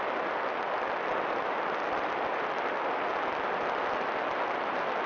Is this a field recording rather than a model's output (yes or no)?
yes